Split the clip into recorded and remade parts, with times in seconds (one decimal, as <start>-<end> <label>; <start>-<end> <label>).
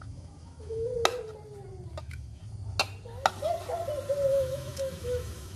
0.0-0.9 remade; 0.9-2.0 recorded; 2.0-2.4 remade; 2.4-4.3 recorded; 4.3-5.6 remade